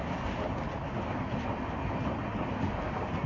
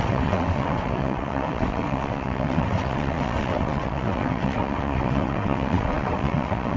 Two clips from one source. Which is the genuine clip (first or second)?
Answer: first